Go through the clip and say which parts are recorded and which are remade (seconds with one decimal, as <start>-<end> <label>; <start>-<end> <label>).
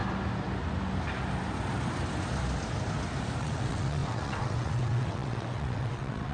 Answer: 0.0-3.4 recorded; 3.4-6.3 remade